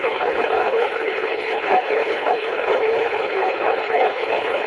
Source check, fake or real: fake